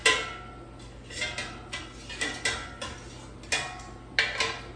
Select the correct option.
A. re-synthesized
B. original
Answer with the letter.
B